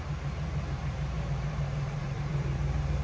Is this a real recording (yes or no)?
no